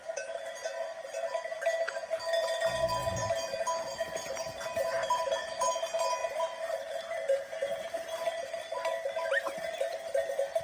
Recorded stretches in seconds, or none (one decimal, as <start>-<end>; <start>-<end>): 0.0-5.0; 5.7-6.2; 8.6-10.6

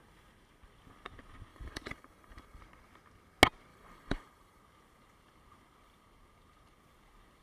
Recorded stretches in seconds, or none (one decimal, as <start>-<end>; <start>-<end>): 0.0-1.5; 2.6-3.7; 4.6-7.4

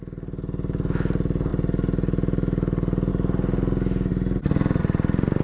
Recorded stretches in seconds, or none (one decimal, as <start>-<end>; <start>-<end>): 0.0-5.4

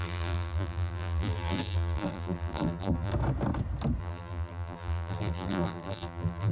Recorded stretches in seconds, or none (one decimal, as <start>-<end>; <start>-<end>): 3.1-4.0

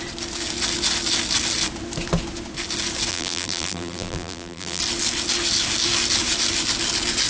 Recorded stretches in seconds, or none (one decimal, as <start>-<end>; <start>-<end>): 0.0-3.1; 4.8-7.3